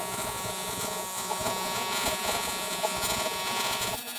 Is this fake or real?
fake